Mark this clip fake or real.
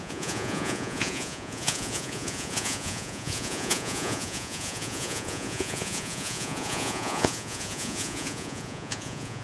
fake